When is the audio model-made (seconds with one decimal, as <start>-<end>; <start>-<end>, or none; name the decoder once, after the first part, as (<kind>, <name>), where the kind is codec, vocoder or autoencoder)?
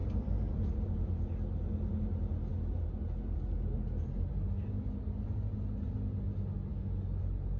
0.0-0.7 (vocoder, BigVGAN v2)